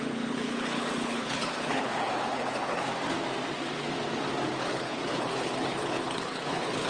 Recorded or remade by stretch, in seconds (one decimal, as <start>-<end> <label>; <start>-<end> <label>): 0.0-2.9 remade; 2.9-4.6 recorded; 4.6-6.9 remade